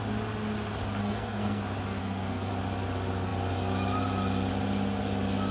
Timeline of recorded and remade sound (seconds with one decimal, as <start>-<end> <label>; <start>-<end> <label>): 0.0-1.0 recorded; 1.0-1.6 remade; 1.6-2.0 recorded; 2.0-2.5 remade; 2.5-5.5 recorded